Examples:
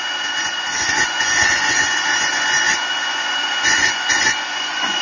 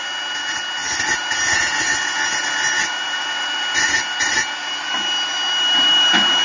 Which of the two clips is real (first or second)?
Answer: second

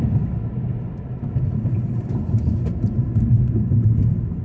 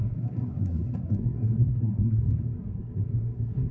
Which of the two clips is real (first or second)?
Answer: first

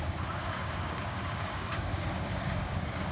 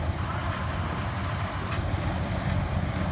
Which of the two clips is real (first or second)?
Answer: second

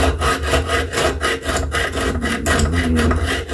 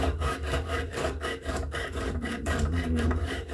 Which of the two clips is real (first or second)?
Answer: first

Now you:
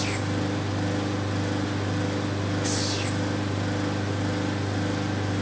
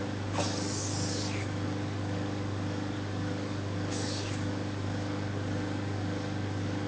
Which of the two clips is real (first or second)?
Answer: first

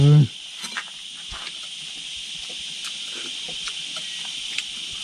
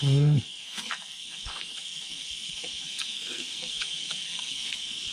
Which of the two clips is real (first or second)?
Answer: first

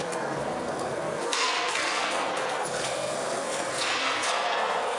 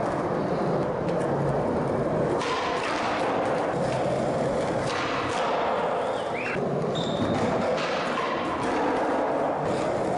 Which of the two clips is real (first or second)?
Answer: second